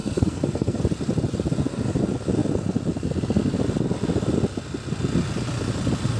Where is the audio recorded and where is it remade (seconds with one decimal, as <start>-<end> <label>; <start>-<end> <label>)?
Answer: 0.0-0.8 remade; 0.8-6.2 recorded